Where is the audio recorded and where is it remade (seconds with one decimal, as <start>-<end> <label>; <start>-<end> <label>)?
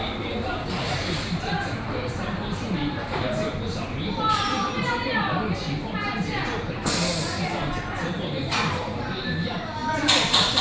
0.0-4.4 remade; 4.4-8.1 recorded; 8.1-10.6 remade